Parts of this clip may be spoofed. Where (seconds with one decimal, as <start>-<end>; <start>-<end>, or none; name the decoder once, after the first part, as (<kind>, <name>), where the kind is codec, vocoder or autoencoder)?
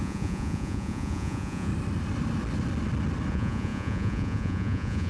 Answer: 0.0-1.7 (vocoder, Vocos); 3.3-5.1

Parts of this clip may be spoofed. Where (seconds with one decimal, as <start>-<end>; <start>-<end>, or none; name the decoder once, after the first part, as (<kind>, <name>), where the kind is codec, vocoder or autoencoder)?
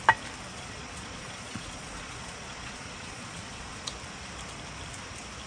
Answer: 0.5-3.8 (vocoder, Vocos)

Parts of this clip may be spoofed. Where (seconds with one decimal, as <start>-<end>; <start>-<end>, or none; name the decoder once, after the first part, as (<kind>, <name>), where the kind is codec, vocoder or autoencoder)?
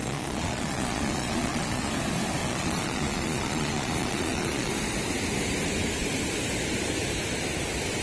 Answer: 0.0-1.9 (vocoder, Vocos); 2.4-4.7